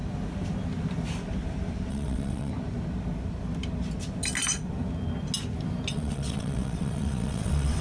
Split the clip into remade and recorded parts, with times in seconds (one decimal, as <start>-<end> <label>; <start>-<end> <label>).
0.0-1.9 recorded; 1.9-2.5 remade; 2.5-5.9 recorded; 5.9-7.8 remade